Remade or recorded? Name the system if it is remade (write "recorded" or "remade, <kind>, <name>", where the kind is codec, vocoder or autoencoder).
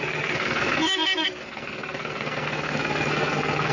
remade, codec, SNAC